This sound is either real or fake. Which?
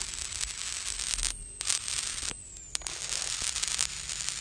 real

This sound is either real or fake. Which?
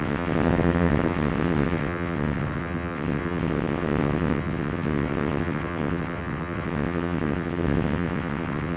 fake